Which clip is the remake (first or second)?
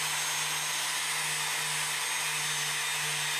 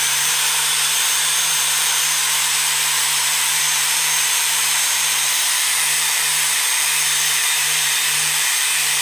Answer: second